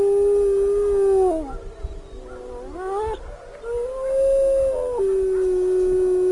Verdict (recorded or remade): recorded